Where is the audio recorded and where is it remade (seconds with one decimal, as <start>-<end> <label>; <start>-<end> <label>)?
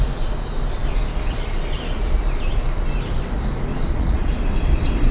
0.0-3.7 recorded; 3.7-4.4 remade; 4.4-5.1 recorded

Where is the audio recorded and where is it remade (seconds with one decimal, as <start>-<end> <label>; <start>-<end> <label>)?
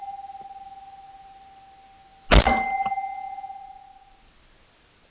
0.0-5.1 recorded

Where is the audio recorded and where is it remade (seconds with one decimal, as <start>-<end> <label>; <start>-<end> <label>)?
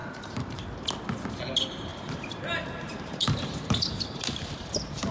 0.0-0.6 remade; 0.6-1.9 recorded; 1.9-5.1 remade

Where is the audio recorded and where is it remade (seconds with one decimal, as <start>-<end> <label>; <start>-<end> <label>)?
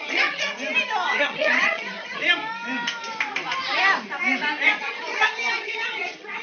0.0-0.5 remade; 0.5-1.1 recorded; 1.1-2.2 remade; 2.2-4.8 recorded; 4.8-6.4 remade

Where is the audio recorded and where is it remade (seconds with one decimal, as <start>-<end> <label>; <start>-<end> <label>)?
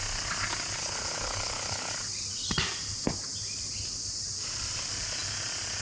0.0-0.8 recorded; 0.8-1.9 remade; 1.9-5.8 recorded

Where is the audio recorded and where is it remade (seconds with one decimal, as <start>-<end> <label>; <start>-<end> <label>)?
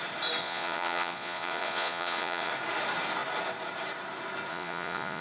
0.0-0.4 recorded; 0.4-2.5 remade; 2.5-4.5 recorded; 4.5-5.2 remade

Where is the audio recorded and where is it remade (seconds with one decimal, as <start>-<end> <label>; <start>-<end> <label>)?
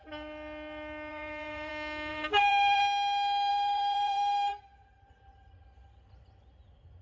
0.0-1.1 recorded; 1.1-1.7 remade; 1.7-2.1 recorded; 2.1-2.8 remade; 2.8-3.5 recorded; 3.5-5.6 remade; 5.6-7.0 recorded